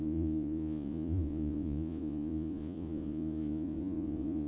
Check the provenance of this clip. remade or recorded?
remade